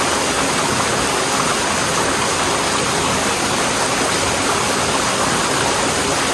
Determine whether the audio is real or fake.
real